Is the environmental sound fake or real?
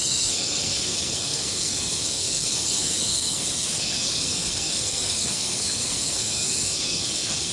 fake